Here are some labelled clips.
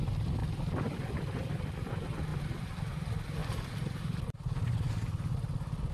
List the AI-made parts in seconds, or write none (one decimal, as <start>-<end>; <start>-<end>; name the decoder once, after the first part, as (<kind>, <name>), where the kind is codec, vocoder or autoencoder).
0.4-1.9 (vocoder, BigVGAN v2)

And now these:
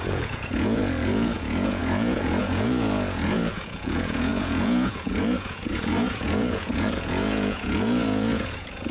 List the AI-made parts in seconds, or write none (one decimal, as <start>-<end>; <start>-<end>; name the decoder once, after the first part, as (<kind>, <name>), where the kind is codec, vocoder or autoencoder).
0.0-8.9 (vocoder, Vocos)

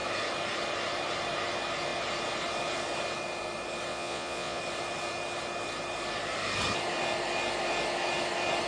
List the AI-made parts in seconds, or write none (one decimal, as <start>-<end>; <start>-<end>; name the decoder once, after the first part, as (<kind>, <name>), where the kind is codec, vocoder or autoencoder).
3.9-4.6 (vocoder, Vocos)

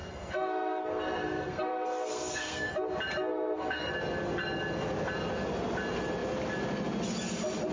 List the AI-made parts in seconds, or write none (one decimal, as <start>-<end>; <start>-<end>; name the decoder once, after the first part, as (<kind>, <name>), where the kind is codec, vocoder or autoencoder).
0.0-2.7 (codec, SNAC); 3.3-3.9

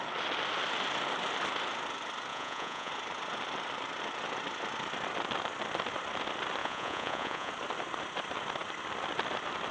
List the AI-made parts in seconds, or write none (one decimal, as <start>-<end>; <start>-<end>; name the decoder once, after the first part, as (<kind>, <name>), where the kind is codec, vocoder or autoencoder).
2.3-2.9 (vocoder, Vocos); 6.6-7.5